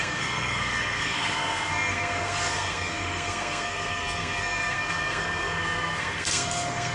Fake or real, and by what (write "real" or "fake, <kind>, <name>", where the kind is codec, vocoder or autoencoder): fake, codec, SNAC